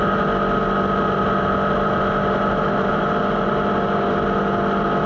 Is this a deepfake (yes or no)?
no